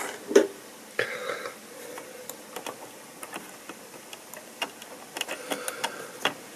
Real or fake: real